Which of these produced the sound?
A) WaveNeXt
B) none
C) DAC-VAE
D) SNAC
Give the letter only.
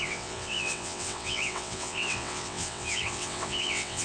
A